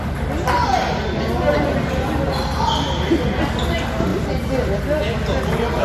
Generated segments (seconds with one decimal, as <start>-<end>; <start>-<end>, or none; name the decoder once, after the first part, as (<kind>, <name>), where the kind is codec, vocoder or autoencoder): none